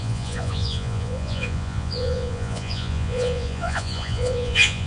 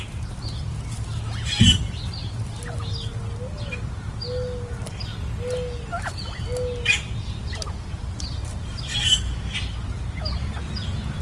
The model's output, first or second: first